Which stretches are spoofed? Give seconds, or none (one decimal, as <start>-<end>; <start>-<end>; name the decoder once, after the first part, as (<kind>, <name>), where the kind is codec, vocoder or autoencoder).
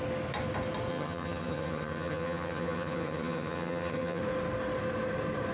0.9-4.2 (vocoder, HiFi-GAN)